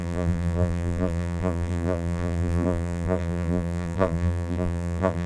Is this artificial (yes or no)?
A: yes